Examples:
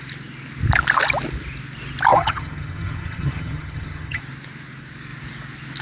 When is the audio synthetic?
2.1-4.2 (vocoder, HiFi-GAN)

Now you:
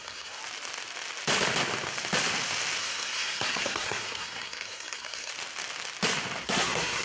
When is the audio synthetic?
0.0-0.4 (codec, SNAC); 2.8-5.3; 6.4-7.0

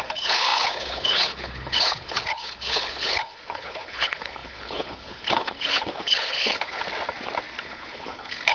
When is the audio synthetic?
0.0-6.8 (codec, HILCodec); 7.6-8.5